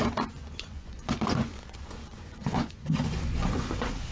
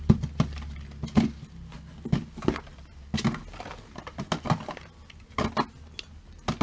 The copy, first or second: first